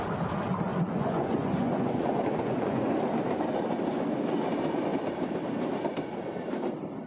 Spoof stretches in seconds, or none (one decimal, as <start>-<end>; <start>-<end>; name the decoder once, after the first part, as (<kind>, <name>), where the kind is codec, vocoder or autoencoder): 0.7-3.0 (vocoder, Vocos)